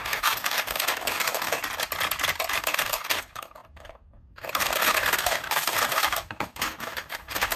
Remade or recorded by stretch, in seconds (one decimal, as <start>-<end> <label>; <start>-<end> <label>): 0.0-1.6 remade; 1.6-2.6 recorded; 2.6-7.6 remade